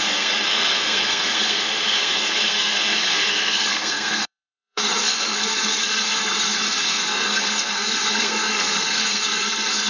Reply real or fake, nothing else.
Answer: fake